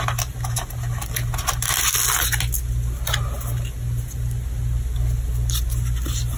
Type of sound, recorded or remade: recorded